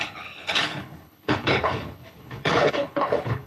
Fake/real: fake